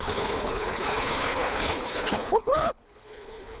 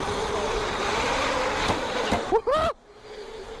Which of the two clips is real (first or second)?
second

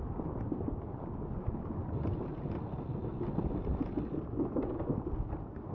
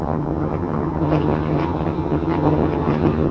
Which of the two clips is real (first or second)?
first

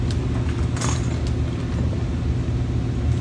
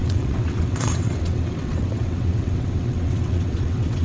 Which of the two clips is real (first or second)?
first